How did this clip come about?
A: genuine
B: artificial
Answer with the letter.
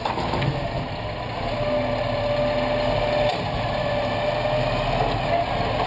A